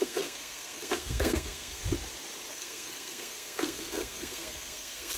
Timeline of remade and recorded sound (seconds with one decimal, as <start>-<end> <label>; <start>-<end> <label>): 0.0-1.8 remade; 1.8-2.5 recorded; 2.5-5.2 remade